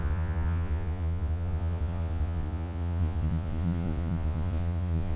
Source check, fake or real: fake